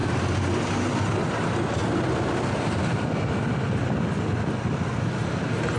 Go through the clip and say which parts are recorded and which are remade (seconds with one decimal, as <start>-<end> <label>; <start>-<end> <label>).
0.0-5.8 recorded